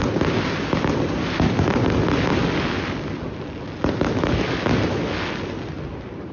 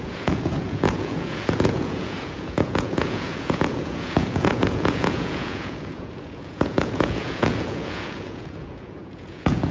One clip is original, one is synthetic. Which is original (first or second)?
first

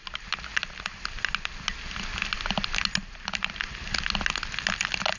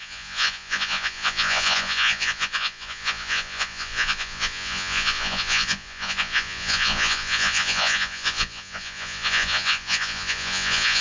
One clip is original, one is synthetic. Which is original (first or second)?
first